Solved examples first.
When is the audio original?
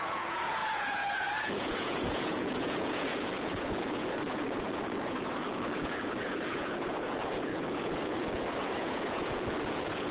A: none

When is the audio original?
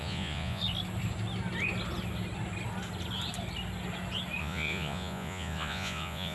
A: 0.6-4.4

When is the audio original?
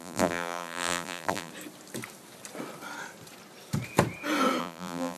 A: 1.5-4.6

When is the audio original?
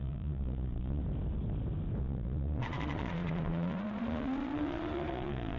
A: 1.0-2.0